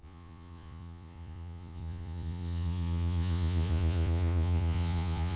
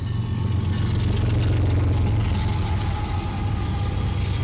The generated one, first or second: first